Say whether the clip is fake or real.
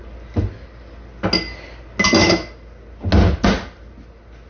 real